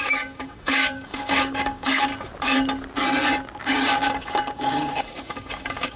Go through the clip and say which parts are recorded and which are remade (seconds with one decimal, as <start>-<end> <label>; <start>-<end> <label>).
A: 0.0-2.1 remade; 2.1-3.6 recorded; 3.6-6.0 remade